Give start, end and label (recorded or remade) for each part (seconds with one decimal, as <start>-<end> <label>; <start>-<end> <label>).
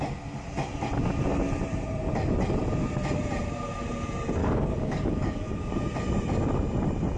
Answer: 0.0-4.4 recorded; 4.4-5.7 remade; 5.7-7.2 recorded